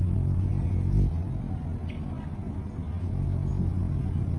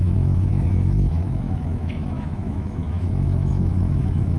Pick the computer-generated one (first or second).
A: second